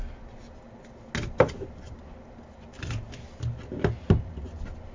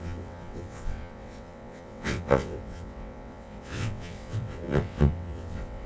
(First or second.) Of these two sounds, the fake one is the second